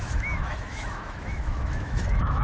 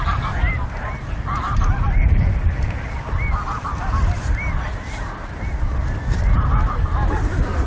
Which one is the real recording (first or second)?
second